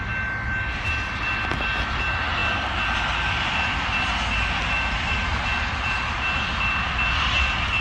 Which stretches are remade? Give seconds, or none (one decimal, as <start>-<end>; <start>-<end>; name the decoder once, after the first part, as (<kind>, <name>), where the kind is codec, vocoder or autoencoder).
none